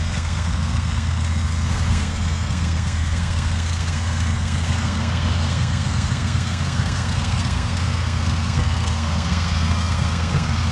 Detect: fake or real fake